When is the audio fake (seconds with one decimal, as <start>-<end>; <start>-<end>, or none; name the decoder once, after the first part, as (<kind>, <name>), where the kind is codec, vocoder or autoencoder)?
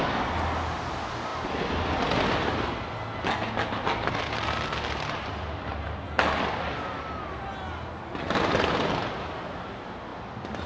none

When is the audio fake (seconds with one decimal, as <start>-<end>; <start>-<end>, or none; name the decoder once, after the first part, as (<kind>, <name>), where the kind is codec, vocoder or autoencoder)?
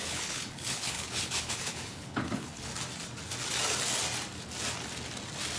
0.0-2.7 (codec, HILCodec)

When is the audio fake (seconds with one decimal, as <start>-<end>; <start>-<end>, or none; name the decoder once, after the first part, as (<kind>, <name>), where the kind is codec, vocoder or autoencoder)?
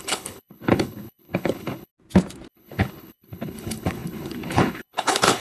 0.0-1.9 (codec, HILCodec); 2.5-5.4